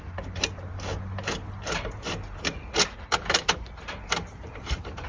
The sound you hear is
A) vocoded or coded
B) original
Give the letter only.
B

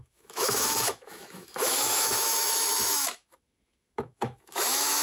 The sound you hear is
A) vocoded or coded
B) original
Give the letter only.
A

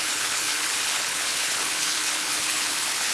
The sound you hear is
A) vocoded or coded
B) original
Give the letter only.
A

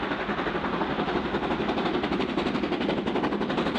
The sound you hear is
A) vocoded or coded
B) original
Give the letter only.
B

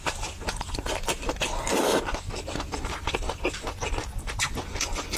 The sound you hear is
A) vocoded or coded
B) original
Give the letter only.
B